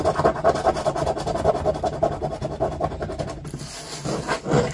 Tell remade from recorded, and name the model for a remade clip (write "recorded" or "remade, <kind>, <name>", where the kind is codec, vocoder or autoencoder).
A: recorded